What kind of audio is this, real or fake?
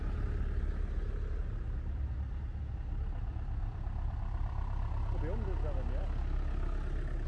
real